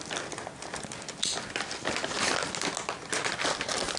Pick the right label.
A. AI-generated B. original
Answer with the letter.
B